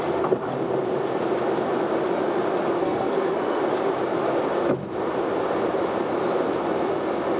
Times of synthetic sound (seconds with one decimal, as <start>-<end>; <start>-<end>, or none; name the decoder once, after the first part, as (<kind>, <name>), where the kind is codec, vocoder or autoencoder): 2.8-3.6 (codec, SNAC)